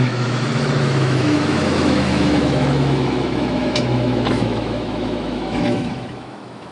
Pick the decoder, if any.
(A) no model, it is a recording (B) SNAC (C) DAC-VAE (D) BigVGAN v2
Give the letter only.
C